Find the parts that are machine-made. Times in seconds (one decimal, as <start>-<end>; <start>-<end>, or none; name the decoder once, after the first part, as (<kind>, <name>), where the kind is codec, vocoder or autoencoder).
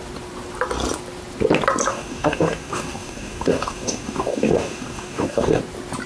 1.9-5.6 (codec, DAC)